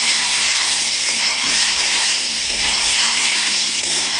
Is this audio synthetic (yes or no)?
yes